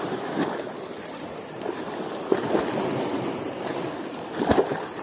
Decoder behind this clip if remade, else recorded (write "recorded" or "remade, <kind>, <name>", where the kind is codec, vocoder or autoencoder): recorded